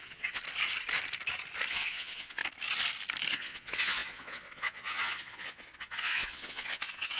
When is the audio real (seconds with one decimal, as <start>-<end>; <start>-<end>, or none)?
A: 0.4-1.7; 2.4-3.3